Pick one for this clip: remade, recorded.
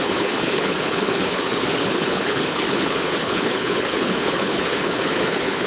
remade